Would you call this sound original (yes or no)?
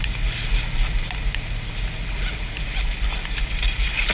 yes